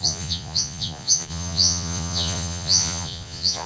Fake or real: fake